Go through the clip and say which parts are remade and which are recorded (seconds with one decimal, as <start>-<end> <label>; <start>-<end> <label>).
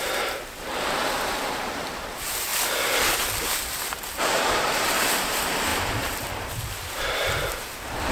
0.0-2.5 remade; 2.5-3.9 recorded; 3.9-8.1 remade